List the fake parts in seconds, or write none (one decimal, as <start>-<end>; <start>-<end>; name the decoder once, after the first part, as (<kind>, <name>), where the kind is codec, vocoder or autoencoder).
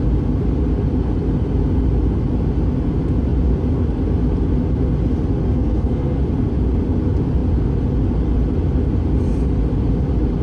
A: 5.4-6.2 (codec, SNAC)